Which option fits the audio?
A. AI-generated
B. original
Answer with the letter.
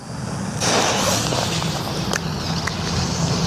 B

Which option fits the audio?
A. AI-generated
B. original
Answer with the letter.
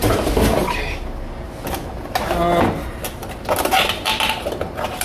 B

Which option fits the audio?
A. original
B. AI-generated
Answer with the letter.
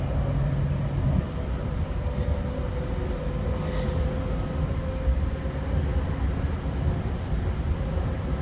A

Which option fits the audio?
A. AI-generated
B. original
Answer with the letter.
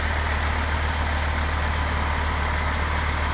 B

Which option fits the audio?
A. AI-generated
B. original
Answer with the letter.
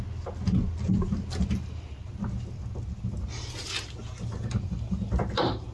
B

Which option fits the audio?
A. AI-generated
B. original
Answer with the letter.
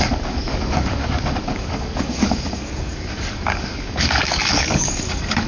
A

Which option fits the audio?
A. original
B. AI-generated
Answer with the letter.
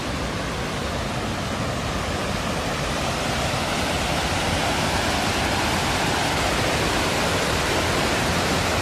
A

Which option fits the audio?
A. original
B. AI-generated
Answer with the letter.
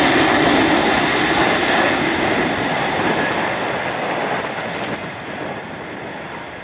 A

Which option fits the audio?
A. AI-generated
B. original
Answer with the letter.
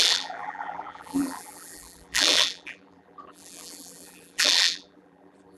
A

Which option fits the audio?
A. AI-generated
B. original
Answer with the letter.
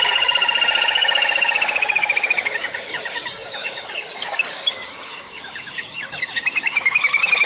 A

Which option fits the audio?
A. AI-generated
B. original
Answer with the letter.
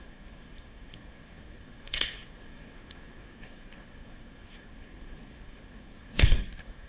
A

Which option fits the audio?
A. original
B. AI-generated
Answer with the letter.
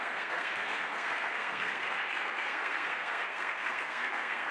B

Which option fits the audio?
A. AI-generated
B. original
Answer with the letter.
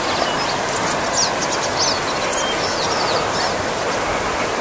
B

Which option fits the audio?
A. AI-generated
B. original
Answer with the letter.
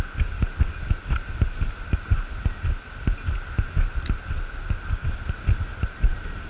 B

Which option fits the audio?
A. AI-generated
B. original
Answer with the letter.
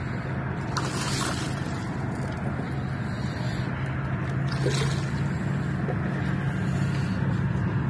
B